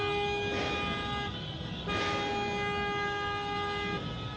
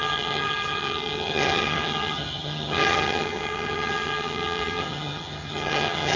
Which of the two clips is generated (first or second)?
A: second